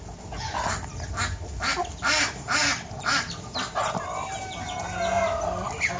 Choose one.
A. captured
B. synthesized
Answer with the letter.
A